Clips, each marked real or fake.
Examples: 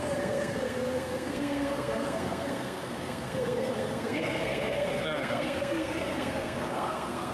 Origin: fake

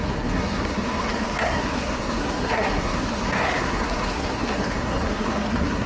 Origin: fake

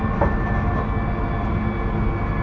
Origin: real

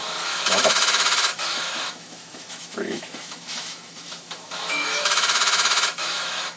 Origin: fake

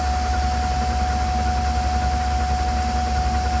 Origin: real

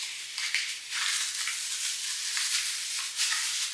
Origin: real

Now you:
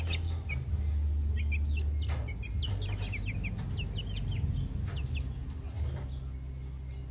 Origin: real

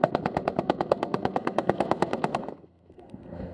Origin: fake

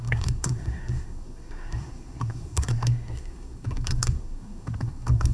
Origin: fake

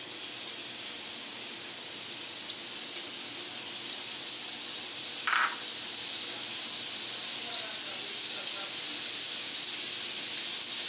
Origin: real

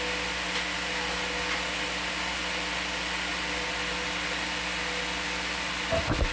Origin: real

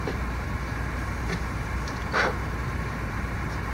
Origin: fake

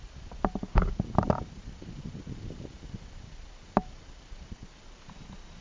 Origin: real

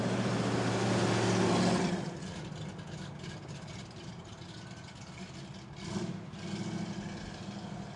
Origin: real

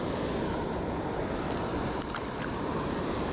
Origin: real